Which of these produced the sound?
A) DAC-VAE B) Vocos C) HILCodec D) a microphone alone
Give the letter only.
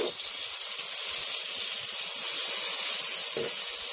D